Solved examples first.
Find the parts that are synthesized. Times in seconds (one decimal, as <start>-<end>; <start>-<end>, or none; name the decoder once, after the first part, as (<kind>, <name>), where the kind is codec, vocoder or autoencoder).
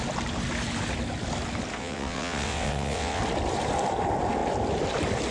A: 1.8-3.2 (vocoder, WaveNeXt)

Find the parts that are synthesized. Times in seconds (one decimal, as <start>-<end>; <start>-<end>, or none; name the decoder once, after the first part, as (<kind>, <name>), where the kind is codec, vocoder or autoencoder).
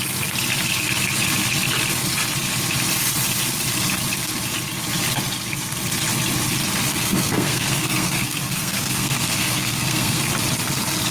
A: 6.9-10.3 (codec, SNAC)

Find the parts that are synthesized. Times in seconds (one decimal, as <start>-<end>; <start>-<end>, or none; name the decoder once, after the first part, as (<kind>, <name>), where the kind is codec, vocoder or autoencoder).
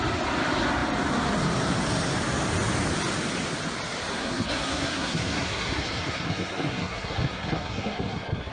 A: 4.1-8.5 (codec, SNAC)